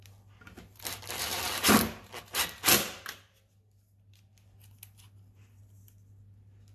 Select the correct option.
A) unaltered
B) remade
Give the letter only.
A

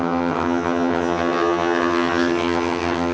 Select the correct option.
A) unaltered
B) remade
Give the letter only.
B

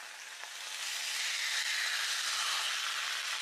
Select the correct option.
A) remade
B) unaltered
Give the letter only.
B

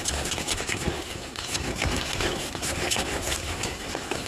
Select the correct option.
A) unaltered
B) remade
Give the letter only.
B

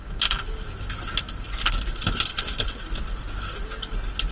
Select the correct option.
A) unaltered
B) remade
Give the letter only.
A